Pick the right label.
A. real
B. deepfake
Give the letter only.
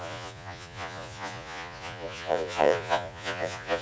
B